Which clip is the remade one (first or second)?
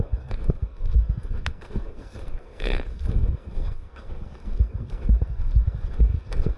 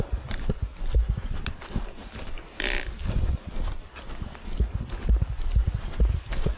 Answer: first